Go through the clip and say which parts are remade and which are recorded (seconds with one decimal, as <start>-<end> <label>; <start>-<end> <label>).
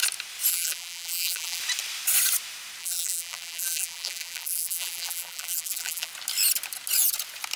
0.0-0.5 recorded; 0.5-1.6 remade; 1.6-2.8 recorded; 2.8-6.1 remade; 6.1-7.6 recorded